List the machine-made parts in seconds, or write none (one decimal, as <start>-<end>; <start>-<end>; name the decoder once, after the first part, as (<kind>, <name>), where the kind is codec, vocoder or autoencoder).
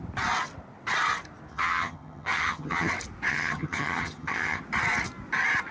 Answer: 1.5-2.9 (vocoder, HiFi-GAN); 3.3-4.6